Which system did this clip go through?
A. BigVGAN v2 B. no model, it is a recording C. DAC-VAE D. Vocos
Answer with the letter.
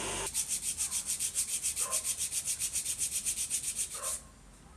B